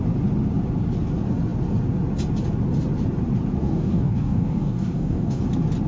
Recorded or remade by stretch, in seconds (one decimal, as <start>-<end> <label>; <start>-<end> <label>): 0.0-3.6 recorded; 3.6-5.4 remade; 5.4-5.9 recorded